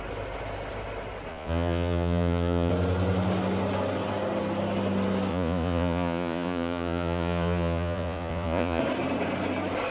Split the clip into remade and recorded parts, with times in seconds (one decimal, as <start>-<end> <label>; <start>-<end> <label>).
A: 0.0-1.3 recorded; 1.3-2.7 remade; 2.7-5.3 recorded; 5.3-8.8 remade; 8.8-9.9 recorded